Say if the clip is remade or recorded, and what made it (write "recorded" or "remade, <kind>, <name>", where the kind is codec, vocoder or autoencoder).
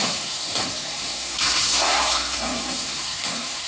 remade, codec, SNAC